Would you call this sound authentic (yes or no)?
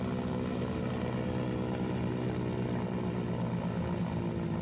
yes